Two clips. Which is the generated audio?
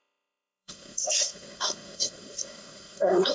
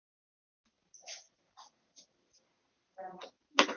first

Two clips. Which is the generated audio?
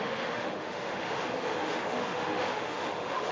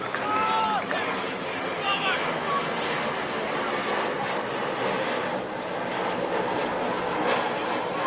first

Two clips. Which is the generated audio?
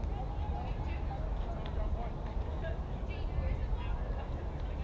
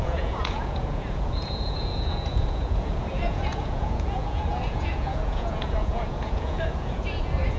second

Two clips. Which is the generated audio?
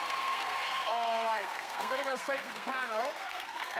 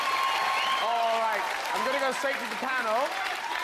first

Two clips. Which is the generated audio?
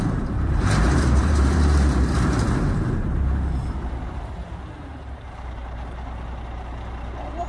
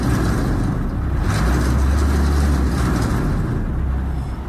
first